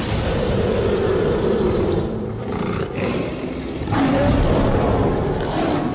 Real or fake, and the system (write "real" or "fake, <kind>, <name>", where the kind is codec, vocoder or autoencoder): fake, vocoder, BigVGAN v2